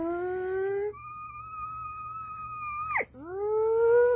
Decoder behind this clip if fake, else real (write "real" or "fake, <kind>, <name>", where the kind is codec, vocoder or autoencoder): real